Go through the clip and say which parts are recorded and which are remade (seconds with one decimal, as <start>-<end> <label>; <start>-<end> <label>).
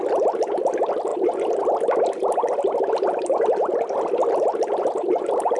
0.0-4.2 recorded; 4.2-5.6 remade